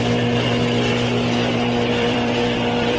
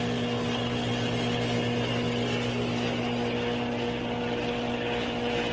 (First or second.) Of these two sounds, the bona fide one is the second